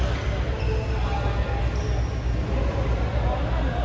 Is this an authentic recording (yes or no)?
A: yes